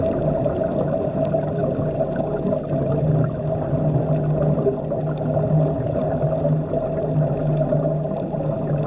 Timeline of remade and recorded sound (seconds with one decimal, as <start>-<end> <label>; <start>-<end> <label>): 0.0-8.9 recorded